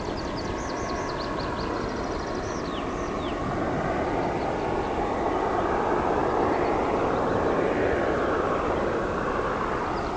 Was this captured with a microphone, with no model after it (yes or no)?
yes